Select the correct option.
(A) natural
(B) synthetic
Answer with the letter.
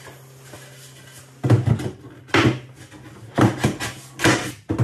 A